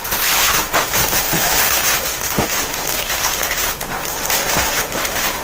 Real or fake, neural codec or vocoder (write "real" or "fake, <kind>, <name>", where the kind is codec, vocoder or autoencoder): fake, autoencoder, DAC-VAE